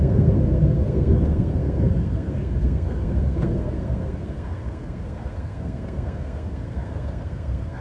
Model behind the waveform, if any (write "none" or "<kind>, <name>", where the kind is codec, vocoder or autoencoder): codec, SNAC